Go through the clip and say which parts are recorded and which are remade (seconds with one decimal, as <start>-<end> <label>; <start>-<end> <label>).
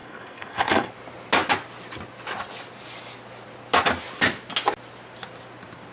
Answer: 0.0-0.9 remade; 0.9-5.9 recorded